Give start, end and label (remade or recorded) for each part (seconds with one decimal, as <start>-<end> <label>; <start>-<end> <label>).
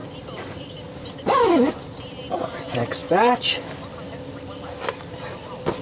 0.0-5.8 recorded